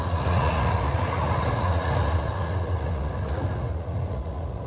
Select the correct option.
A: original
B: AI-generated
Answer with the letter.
B